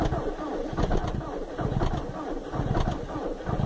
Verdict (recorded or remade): recorded